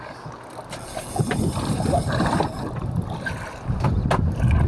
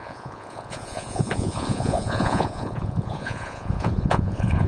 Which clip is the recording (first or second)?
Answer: first